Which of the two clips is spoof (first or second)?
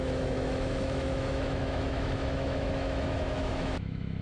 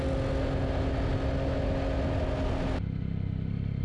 first